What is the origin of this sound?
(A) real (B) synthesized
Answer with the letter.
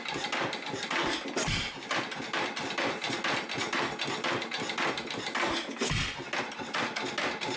A